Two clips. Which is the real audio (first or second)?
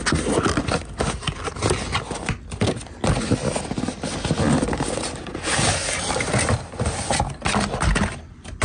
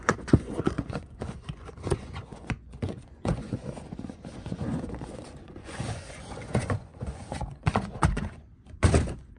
first